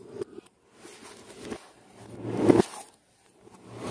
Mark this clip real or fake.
real